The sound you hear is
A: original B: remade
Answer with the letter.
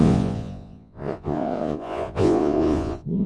B